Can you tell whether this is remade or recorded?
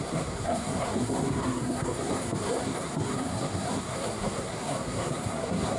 remade